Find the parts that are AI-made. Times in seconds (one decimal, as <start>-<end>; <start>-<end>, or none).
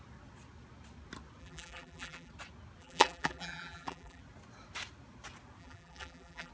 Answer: 1.4-2.3; 2.8-4.2; 5.6-6.5